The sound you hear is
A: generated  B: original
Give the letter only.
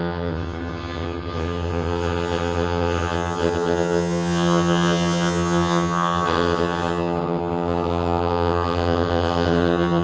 A